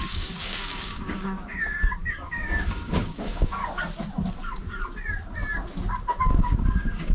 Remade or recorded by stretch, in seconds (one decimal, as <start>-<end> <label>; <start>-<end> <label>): 0.0-3.6 remade; 3.6-6.2 recorded; 6.2-7.1 remade